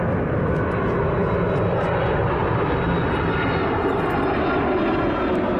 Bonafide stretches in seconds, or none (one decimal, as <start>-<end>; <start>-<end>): 0.0-5.6